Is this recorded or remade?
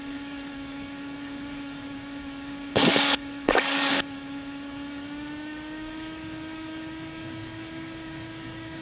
remade